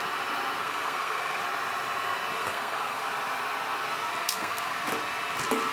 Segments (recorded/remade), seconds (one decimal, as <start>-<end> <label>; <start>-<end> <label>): 0.0-0.6 recorded; 0.6-1.4 remade; 1.4-2.4 recorded; 2.4-3.0 remade; 3.0-4.2 recorded; 4.2-4.7 remade; 4.7-5.7 recorded

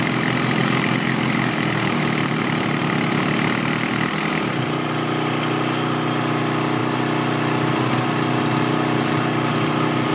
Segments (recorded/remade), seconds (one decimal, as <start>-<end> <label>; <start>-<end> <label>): 0.0-0.6 recorded; 0.6-2.8 remade; 2.8-10.1 recorded

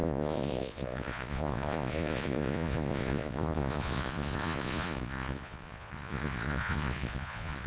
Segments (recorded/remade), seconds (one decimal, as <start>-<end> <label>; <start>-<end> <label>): 0.0-7.7 remade

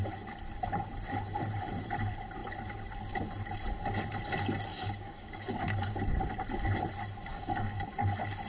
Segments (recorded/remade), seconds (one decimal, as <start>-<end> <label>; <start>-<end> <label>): 0.0-4.7 recorded; 4.7-5.9 remade; 5.9-7.3 recorded; 7.3-7.8 remade; 7.8-8.5 recorded

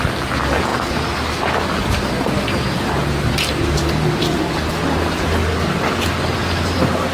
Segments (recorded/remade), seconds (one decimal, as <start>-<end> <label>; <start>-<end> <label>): 0.0-7.1 recorded

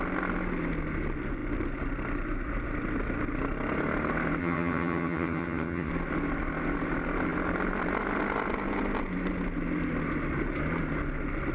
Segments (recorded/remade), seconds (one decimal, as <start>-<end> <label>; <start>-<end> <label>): 0.0-4.4 recorded; 4.4-5.9 remade; 5.9-11.5 recorded